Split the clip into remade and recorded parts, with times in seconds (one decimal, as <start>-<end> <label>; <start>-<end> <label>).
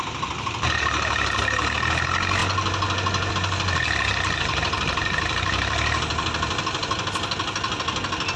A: 0.0-8.4 recorded